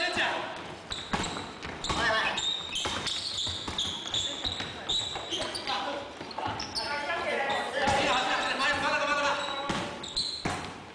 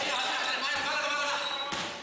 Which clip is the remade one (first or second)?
second